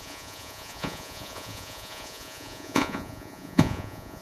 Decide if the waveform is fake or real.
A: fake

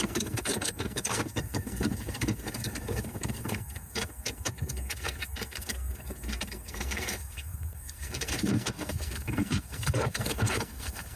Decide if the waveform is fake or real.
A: fake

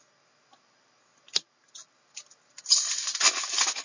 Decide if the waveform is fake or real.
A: real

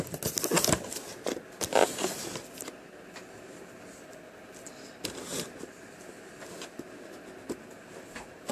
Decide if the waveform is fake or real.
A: real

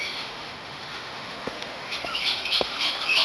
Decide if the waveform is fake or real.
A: fake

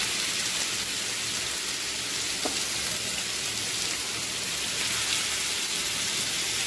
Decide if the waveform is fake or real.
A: real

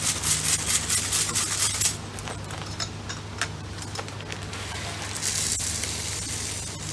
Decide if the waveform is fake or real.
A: real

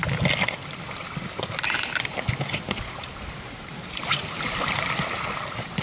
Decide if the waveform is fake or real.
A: real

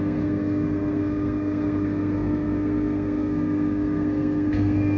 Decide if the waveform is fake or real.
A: fake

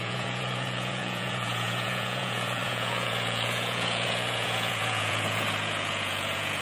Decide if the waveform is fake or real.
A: fake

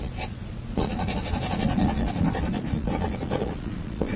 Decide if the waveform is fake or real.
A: fake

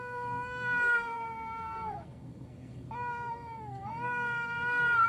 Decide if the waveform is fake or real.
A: fake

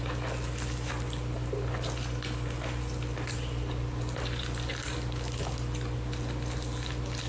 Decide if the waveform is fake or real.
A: real